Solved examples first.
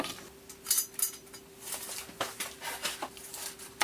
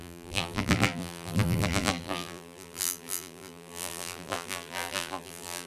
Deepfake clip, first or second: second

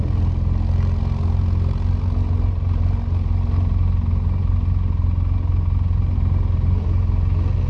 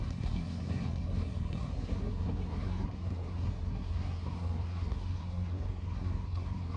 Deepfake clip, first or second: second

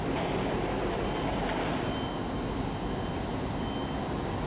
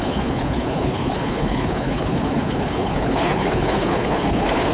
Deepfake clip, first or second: second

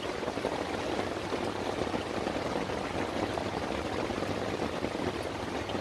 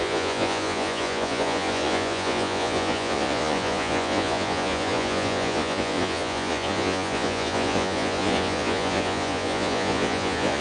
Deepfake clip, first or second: second